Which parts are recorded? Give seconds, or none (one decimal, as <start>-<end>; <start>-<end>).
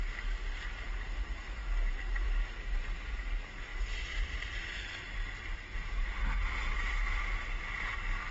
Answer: 0.0-8.3